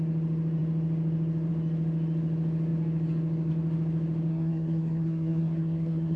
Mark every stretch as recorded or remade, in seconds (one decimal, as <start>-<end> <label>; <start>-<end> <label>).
0.0-4.3 recorded; 4.3-6.2 remade